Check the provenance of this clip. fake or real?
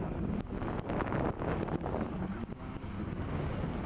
real